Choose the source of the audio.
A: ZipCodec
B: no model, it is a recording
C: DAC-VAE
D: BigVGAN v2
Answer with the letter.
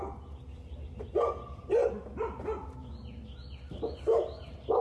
B